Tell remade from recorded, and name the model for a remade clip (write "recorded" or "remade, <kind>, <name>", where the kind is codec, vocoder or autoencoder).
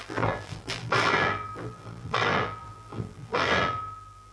remade, vocoder, BigVGAN v2